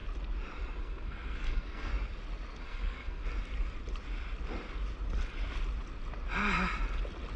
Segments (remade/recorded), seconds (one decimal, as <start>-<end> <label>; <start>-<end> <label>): 0.0-0.8 recorded; 0.8-1.9 remade; 1.9-2.6 recorded; 2.6-3.2 remade; 3.2-7.4 recorded